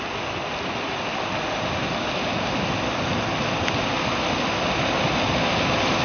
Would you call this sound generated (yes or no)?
no